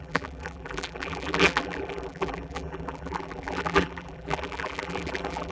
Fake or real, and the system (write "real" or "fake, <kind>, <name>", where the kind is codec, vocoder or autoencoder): fake, vocoder, BigVGAN v2